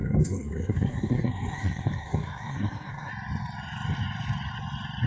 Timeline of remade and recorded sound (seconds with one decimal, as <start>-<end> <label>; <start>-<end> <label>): 0.0-3.1 remade; 3.1-5.1 recorded

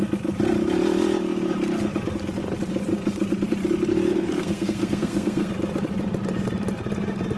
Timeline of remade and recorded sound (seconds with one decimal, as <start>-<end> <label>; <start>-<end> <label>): 0.0-4.1 recorded; 4.1-5.5 remade; 5.5-7.4 recorded

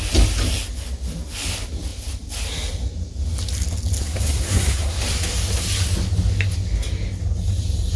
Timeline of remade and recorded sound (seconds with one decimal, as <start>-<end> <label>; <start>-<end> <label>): 0.0-4.0 recorded; 4.0-5.0 remade; 5.0-8.0 recorded

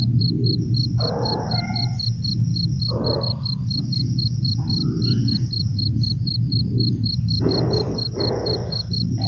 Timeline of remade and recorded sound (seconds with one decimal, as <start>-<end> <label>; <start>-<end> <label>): 0.0-9.3 recorded

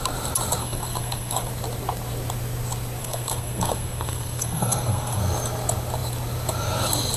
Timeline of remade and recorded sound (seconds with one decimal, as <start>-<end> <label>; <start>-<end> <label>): 0.0-0.6 recorded; 0.6-1.5 remade; 1.5-3.0 recorded; 3.0-5.2 remade; 5.2-7.2 recorded